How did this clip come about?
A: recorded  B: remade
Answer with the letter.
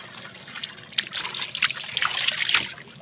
A